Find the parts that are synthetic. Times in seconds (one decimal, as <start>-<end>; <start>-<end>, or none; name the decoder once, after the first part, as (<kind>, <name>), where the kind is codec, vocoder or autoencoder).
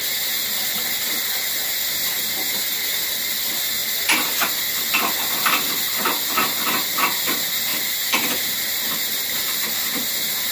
0.0-10.5 (vocoder, BigVGAN v2)